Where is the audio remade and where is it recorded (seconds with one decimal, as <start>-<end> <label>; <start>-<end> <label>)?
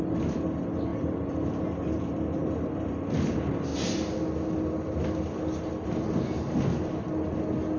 0.0-7.8 recorded